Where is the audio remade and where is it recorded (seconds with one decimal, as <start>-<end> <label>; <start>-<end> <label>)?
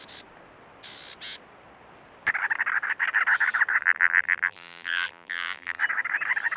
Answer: 0.0-3.8 recorded; 3.8-5.8 remade; 5.8-6.6 recorded